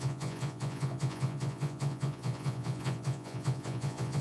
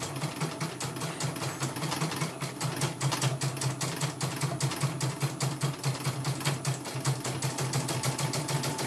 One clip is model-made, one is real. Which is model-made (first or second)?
first